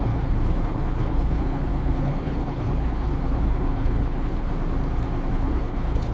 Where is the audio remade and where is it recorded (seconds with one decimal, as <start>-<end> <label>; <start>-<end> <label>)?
0.0-4.5 remade; 4.5-5.3 recorded; 5.3-6.1 remade